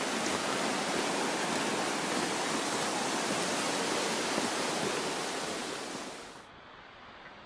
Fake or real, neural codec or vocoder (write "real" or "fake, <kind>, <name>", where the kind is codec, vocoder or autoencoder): real